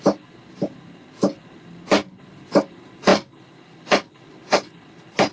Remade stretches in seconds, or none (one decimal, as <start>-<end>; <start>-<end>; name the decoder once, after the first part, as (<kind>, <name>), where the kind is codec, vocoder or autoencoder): none